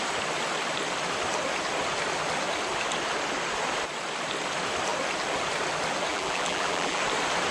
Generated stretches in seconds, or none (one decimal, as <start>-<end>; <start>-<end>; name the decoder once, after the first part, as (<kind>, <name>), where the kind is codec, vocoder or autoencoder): 6.1-7.0 (vocoder, BigVGAN v2)